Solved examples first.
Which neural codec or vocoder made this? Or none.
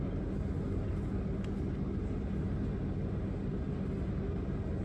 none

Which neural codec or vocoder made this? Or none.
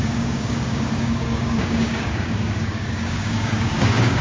codec, DAC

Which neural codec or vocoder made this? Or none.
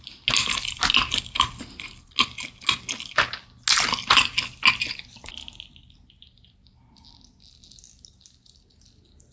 none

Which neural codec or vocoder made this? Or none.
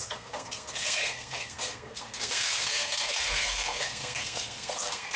codec, SNAC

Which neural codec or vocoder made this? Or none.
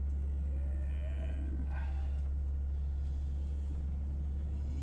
none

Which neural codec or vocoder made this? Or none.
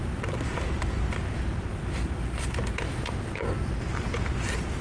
none